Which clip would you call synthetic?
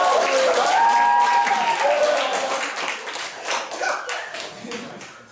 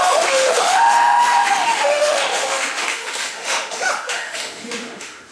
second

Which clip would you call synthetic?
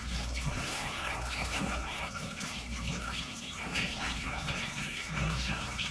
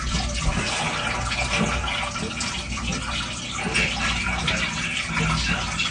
first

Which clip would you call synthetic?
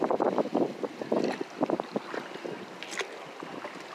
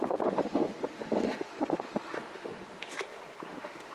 second